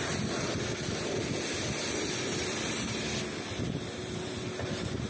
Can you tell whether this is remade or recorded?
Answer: recorded